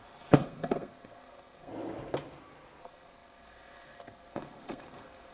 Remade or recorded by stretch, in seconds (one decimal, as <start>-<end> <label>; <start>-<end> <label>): 0.0-1.7 remade; 1.7-2.8 recorded; 2.8-5.3 remade